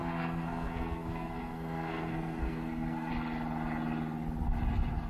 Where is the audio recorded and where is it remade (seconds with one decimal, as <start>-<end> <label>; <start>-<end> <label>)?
0.0-3.1 remade; 3.1-5.1 recorded